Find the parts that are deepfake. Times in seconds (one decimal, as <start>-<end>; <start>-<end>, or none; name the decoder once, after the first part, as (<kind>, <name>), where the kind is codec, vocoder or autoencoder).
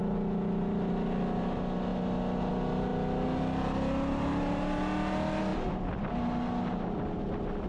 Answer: none